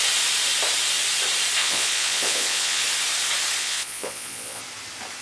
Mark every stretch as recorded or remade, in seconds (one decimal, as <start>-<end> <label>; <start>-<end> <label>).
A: 0.0-1.6 recorded; 1.6-2.8 remade; 2.8-3.6 recorded; 3.6-4.6 remade; 4.6-5.2 recorded